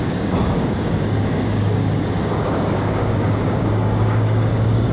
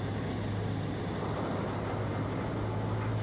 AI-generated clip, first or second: first